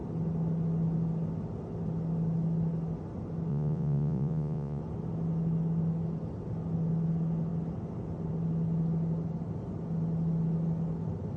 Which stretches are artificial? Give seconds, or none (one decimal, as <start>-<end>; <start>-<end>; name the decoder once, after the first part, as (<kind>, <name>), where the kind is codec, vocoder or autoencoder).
3.5-4.8 (vocoder, Vocos)